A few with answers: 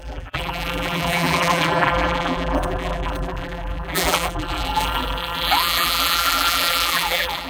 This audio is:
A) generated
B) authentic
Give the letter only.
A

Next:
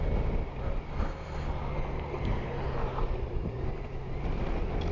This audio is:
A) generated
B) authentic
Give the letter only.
B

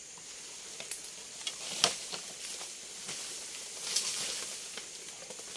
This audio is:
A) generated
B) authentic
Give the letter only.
B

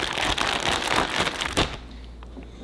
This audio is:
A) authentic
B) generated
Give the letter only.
A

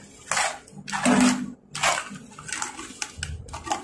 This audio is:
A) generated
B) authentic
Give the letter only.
B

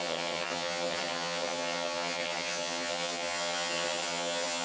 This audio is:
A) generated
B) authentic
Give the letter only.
A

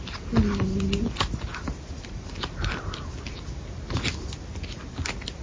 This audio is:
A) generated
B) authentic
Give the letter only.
B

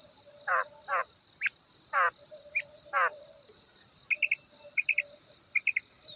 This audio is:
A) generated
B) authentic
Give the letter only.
B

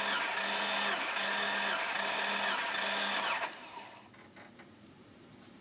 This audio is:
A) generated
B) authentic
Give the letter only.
B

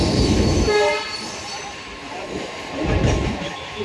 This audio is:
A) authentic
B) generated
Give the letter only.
B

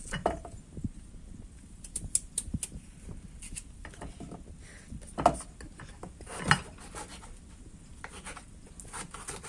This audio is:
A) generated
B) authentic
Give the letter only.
B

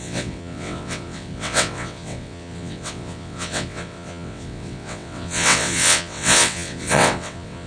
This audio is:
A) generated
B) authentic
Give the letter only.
A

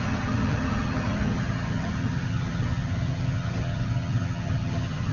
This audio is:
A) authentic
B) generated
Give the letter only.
B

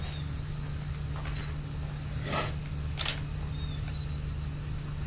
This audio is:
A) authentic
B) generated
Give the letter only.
A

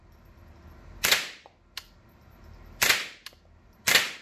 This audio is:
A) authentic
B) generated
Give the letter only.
A